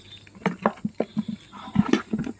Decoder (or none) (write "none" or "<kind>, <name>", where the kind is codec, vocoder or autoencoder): none